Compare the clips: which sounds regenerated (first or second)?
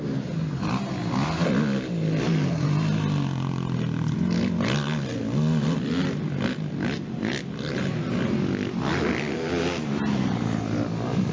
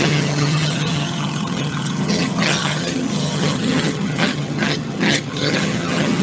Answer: second